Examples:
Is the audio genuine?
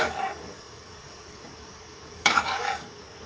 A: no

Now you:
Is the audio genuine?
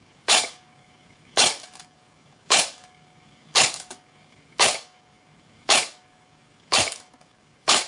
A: no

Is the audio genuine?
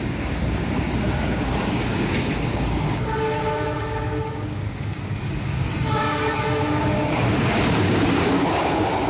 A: no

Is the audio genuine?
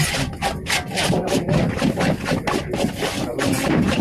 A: yes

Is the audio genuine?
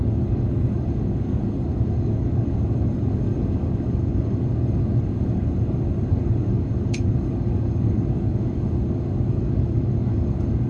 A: no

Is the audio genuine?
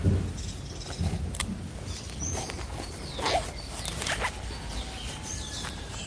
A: yes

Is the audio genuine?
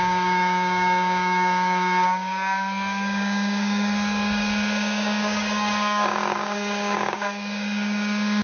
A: no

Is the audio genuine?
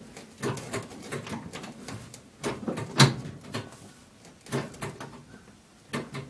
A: yes